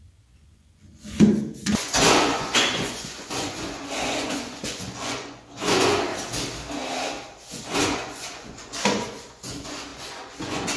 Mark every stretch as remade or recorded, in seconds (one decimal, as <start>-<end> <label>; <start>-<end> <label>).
0.0-6.1 remade; 6.1-7.5 recorded; 7.5-10.8 remade